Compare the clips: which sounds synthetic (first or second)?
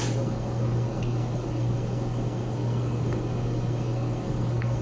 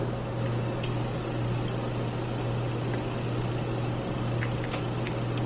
first